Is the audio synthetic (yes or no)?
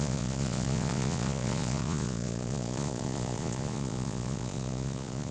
yes